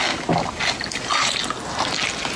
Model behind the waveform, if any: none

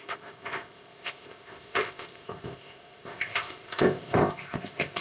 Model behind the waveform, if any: codec, ZipCodec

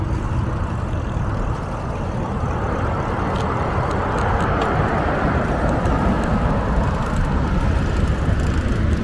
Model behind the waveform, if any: none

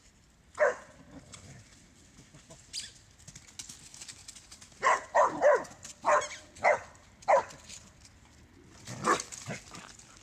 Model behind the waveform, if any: none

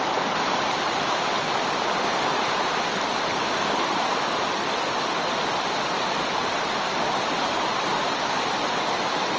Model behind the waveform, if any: none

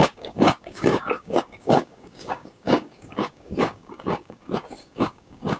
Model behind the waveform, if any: codec, DAC